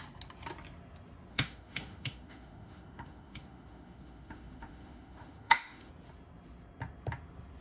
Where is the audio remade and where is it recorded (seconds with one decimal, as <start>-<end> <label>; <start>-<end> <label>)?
0.0-1.3 recorded; 1.3-5.9 remade; 5.9-7.6 recorded